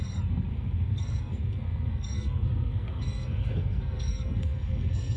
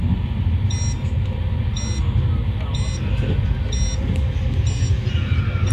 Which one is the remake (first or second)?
first